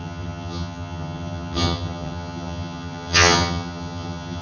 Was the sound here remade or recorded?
remade